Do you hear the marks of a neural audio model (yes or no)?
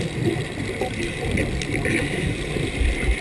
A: no